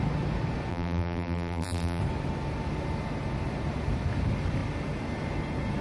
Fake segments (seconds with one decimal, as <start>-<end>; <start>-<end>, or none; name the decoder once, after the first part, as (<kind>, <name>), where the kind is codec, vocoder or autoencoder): 0.7-2.0 (vocoder, BigVGAN v2)